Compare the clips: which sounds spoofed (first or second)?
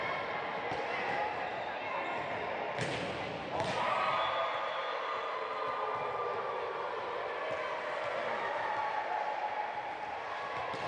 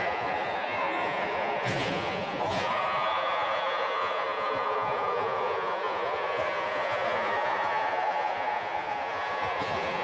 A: second